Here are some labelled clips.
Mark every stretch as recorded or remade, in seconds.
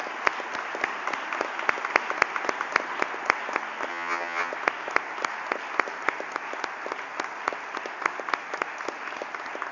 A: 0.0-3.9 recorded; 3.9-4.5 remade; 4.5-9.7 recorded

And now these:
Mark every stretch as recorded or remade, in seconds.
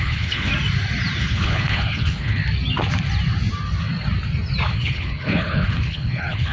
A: 0.0-0.5 remade; 0.5-1.2 recorded; 1.2-2.4 remade; 2.4-4.7 recorded; 4.7-6.5 remade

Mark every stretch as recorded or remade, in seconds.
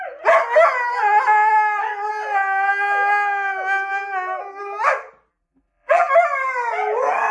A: 0.0-5.3 recorded; 5.3-6.1 remade; 6.1-7.3 recorded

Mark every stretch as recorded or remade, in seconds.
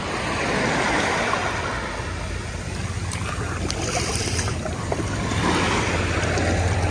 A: 0.0-6.9 recorded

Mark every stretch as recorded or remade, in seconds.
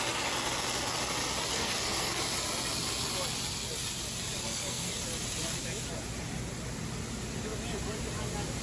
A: 0.0-1.5 recorded; 1.5-2.2 remade; 2.2-4.4 recorded; 4.4-5.0 remade; 5.0-8.6 recorded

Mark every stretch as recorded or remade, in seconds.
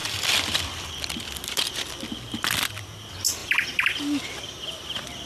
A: 0.0-0.9 remade; 0.9-3.4 recorded; 3.4-4.4 remade; 4.4-5.3 recorded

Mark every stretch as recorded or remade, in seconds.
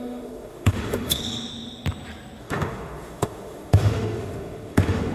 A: 0.0-1.2 remade; 1.2-2.4 recorded; 2.4-5.1 remade